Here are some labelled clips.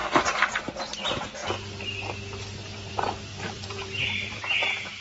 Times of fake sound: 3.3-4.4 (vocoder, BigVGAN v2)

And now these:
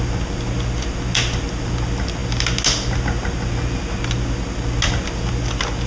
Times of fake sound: none

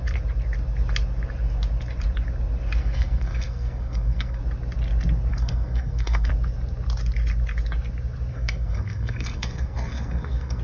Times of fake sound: 2.8-4.4 (codec, SNAC); 5.3-6.3; 8.3-10.6

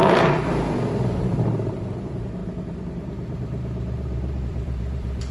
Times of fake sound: 0.0-0.5 (vocoder, BigVGAN v2); 1.2-5.3